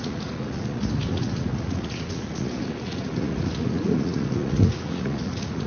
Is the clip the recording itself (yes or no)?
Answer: no